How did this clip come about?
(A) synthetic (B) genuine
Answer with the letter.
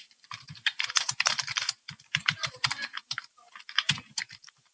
A